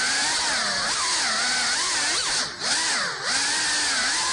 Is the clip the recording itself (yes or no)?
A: yes